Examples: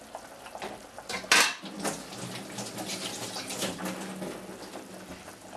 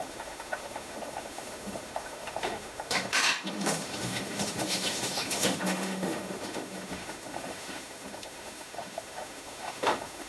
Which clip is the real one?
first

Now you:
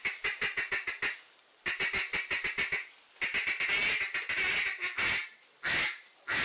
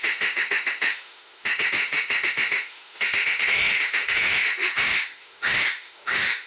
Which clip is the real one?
first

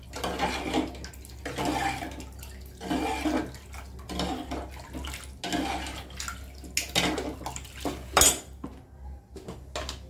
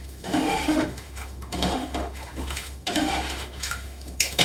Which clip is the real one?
first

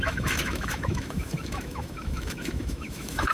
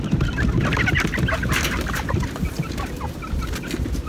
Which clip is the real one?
second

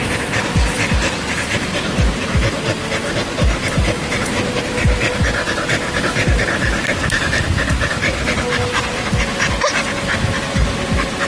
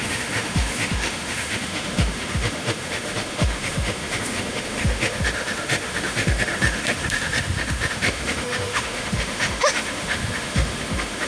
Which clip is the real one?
first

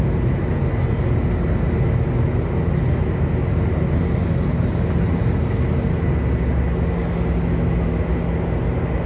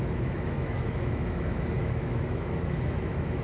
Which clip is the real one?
first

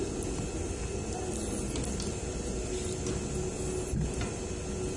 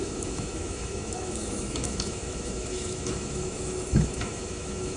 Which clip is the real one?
first